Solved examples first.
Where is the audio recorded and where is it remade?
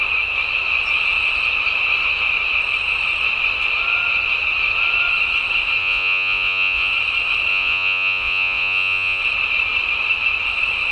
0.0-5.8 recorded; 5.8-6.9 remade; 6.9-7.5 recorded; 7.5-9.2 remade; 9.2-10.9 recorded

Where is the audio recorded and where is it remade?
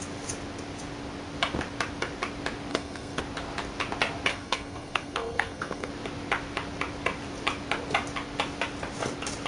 0.0-2.7 recorded; 2.7-3.2 remade; 3.2-4.3 recorded; 4.3-5.9 remade; 5.9-9.5 recorded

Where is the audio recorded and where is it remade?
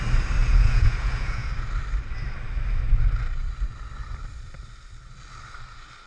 0.0-0.4 recorded; 0.4-1.5 remade; 1.5-6.1 recorded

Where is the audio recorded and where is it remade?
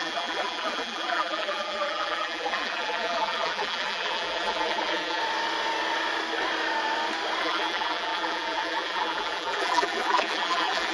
0.0-5.2 remade; 5.2-7.4 recorded; 7.4-10.9 remade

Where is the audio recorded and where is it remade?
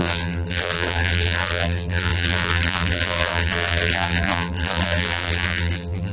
0.0-6.1 remade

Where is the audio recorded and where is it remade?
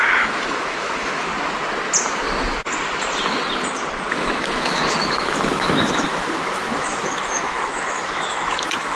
0.0-1.3 remade; 1.3-4.1 recorded; 4.1-9.0 remade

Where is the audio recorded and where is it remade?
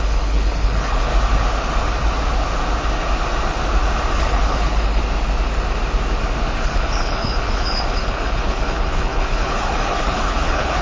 0.0-1.1 remade; 1.1-4.1 recorded; 4.1-5.0 remade; 5.0-6.6 recorded; 6.6-10.8 remade